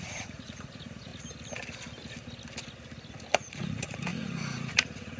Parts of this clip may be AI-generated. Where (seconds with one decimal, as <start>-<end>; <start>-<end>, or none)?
0.0-1.1; 3.1-5.2